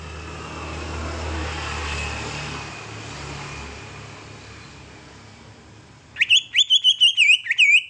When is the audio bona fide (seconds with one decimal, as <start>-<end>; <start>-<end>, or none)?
0.0-7.9

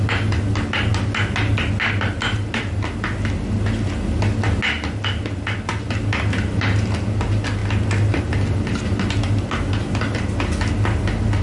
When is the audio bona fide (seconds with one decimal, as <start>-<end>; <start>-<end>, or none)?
0.0-11.4

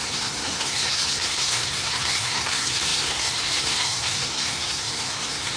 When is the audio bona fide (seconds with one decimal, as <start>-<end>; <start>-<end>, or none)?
none

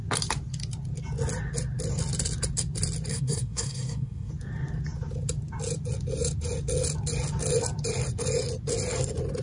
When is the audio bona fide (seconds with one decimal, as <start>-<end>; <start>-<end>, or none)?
0.0-3.1; 4.3-9.4

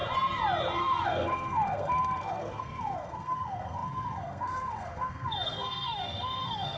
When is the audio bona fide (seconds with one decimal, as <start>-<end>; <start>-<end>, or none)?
0.0-0.8

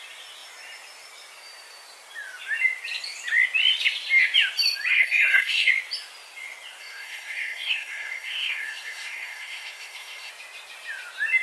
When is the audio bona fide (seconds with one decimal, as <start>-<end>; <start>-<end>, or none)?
0.0-4.9; 5.7-6.8; 10.3-11.4

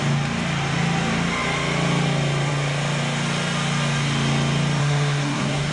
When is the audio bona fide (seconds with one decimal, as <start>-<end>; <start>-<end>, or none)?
0.0-4.8